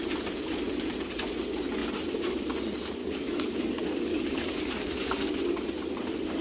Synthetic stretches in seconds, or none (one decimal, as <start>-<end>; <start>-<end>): 3.0-5.3